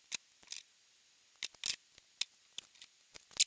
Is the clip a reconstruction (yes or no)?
no